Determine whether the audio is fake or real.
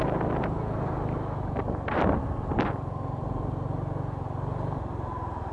real